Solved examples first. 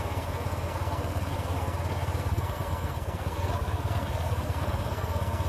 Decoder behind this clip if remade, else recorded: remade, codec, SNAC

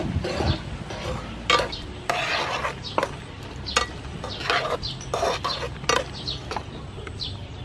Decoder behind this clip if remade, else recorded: recorded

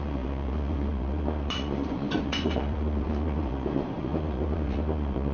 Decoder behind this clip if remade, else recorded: remade, vocoder, Vocos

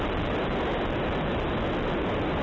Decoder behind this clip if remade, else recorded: recorded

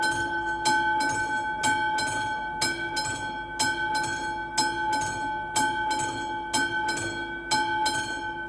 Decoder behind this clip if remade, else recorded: recorded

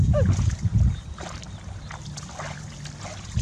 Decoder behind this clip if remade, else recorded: recorded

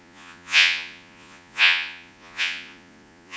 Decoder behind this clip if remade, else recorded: remade, vocoder, Vocos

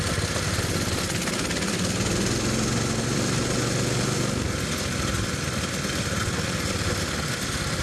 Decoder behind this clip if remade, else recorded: recorded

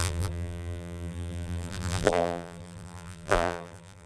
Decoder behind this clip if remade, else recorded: remade, vocoder, BigVGAN v2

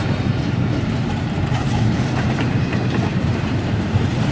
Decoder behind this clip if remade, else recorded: remade, vocoder, BigVGAN v2